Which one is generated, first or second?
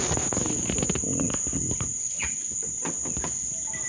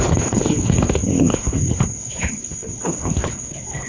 second